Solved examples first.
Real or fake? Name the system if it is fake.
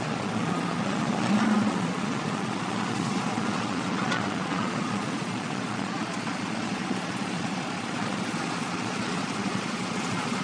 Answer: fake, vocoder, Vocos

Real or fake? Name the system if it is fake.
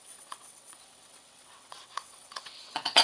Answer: fake, vocoder, WaveNeXt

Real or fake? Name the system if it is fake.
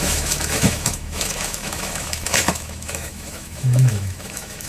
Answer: fake, autoencoder, DAC-VAE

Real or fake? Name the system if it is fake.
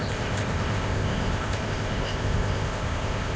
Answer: fake, codec, ZipCodec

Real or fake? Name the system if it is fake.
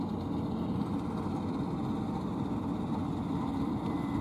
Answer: real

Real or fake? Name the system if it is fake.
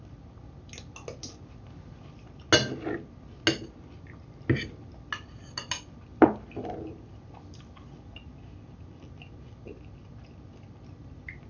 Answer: real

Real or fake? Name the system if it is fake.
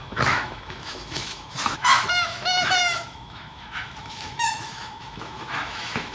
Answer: fake, autoencoder, DAC-VAE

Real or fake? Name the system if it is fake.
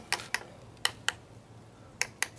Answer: real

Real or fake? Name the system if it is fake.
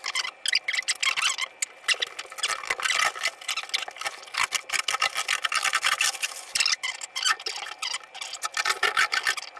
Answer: real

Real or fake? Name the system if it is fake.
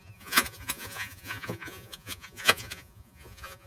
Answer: fake, vocoder, Vocos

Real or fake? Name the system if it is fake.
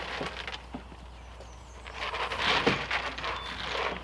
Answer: real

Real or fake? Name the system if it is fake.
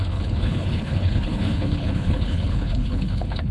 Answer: fake, codec, HILCodec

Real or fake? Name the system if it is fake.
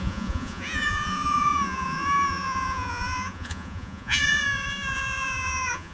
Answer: fake, vocoder, Vocos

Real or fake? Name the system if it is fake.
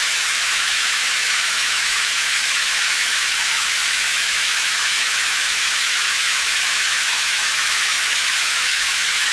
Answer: fake, autoencoder, DAC-VAE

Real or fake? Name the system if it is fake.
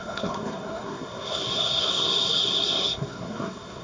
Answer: fake, codec, SNAC